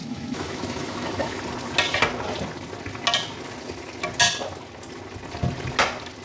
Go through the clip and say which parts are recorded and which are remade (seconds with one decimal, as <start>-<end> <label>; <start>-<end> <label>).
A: 0.0-1.4 remade; 1.4-6.2 recorded